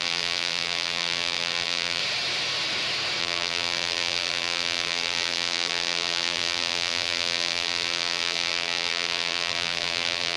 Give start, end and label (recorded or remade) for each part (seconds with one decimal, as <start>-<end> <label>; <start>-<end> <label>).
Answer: 0.0-2.0 remade; 2.0-3.2 recorded; 3.2-10.4 remade